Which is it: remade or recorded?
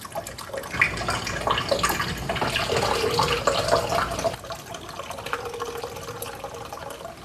recorded